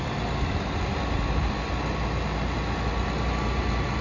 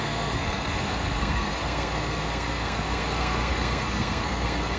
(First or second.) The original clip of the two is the first